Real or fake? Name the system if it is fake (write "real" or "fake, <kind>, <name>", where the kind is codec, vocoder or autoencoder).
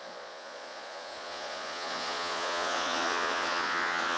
fake, vocoder, Vocos